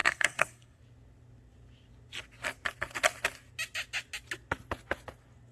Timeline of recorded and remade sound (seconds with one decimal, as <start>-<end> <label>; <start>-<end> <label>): 0.0-0.8 remade; 0.8-5.5 recorded